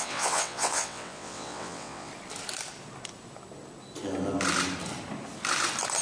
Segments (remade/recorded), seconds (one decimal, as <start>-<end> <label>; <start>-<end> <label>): 0.0-2.1 remade; 2.1-6.0 recorded